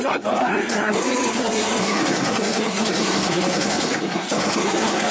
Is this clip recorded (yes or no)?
no